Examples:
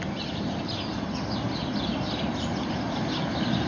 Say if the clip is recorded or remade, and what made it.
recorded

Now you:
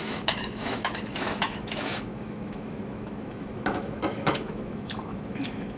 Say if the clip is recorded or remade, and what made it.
remade, autoencoder, DAC-VAE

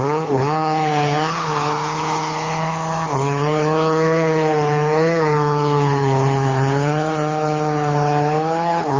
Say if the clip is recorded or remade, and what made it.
remade, codec, HILCodec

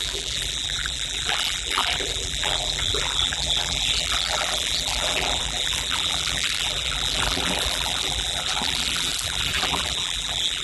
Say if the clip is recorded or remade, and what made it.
remade, vocoder, BigVGAN v2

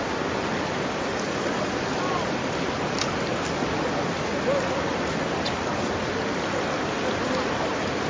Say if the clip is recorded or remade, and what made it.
recorded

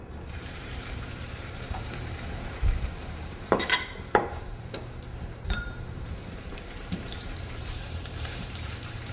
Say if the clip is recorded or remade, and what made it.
remade, vocoder, BigVGAN v2